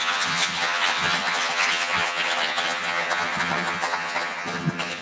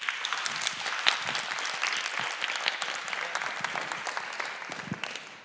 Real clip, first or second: second